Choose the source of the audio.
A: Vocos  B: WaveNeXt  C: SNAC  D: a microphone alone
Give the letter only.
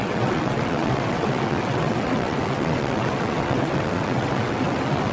B